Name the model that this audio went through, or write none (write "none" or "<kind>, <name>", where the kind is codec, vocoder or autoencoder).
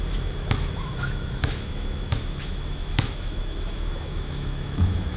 autoencoder, DAC-VAE